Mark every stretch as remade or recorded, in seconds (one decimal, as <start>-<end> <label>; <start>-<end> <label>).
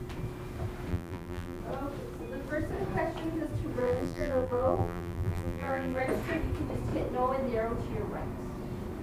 0.0-0.9 recorded; 0.9-1.6 remade; 1.6-3.8 recorded; 3.8-6.0 remade; 6.0-9.0 recorded